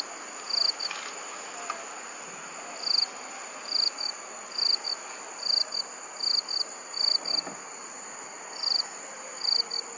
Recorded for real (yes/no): yes